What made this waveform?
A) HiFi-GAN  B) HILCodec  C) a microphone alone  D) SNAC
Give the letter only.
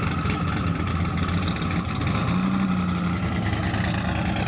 C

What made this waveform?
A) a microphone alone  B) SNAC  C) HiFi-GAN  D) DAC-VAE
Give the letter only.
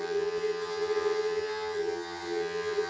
C